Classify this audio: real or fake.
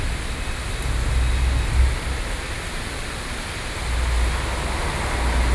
real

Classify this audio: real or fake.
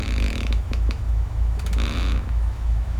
fake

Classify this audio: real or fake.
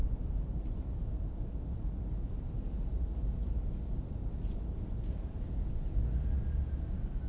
real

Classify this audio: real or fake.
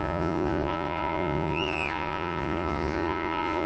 fake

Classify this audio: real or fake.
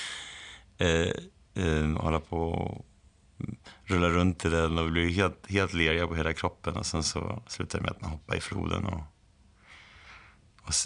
real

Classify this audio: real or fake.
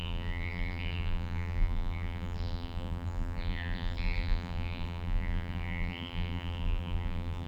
fake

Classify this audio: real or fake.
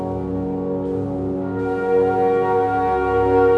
real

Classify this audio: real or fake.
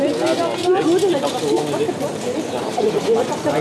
real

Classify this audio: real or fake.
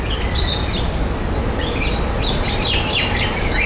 real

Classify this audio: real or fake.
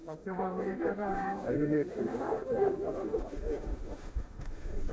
fake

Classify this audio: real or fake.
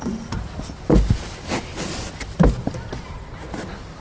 real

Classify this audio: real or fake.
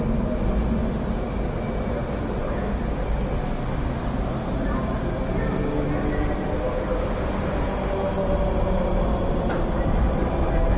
real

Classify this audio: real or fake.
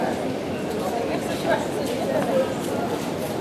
real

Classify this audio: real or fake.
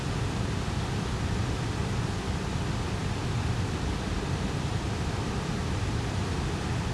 real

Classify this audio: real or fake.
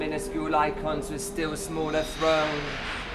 real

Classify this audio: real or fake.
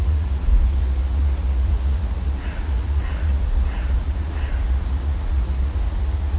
fake